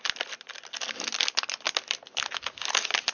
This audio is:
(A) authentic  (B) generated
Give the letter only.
A